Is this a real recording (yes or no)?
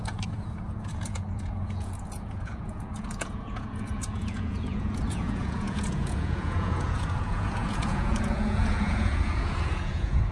no